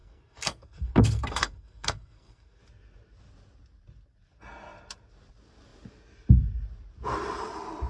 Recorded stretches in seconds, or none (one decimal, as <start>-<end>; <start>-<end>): 2.6-7.9